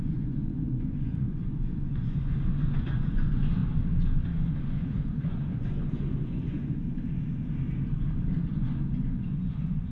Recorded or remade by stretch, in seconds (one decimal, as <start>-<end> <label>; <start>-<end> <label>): 0.0-3.6 remade; 3.6-4.6 recorded; 4.6-6.8 remade; 6.8-8.5 recorded; 8.5-9.9 remade